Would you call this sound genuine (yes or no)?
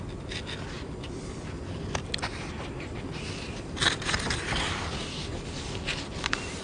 yes